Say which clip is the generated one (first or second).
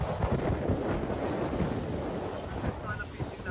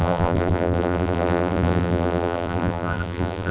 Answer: second